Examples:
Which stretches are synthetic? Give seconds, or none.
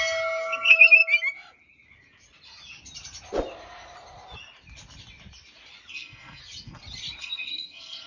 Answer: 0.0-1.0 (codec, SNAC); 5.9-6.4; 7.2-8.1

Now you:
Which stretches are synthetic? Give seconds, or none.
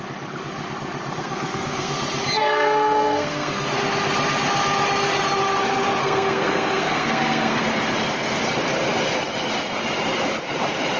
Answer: 1.2-2.0 (codec, SNAC); 2.4-3.8; 6.0-7.6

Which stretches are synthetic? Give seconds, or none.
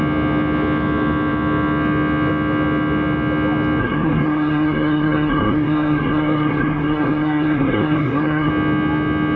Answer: 3.8-8.5 (codec, SNAC)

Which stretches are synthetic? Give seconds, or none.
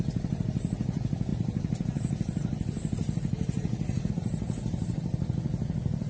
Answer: none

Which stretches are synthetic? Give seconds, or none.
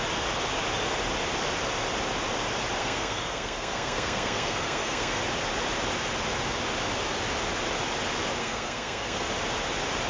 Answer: 2.8-5.2 (codec, SNAC); 8.4-9.3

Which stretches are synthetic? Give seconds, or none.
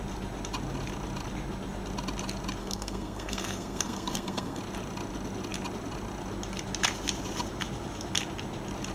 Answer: 2.6-4.6 (codec, SNAC)